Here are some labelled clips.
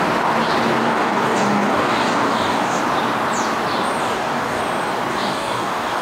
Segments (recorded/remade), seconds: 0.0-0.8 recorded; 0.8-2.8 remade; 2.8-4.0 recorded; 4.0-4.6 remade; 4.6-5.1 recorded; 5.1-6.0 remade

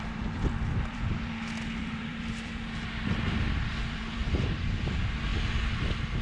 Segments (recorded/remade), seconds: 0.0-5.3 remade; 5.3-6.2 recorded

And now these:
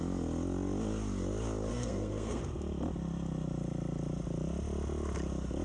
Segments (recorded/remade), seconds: 0.0-1.7 recorded; 1.7-2.4 remade; 2.4-5.6 recorded

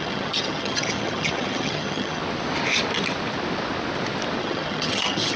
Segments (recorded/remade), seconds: 0.0-2.2 remade; 2.2-4.4 recorded; 4.4-5.4 remade

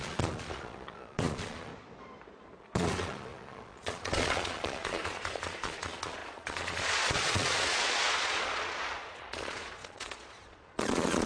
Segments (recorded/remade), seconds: 0.0-1.7 remade; 1.7-2.6 recorded; 2.6-11.3 remade

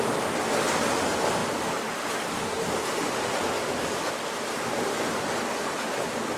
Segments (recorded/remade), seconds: 0.0-6.4 recorded